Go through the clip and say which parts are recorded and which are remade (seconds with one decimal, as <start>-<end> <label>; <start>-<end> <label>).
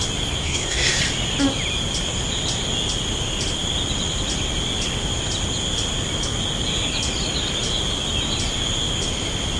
0.0-0.4 recorded; 0.4-1.0 remade; 1.0-9.6 recorded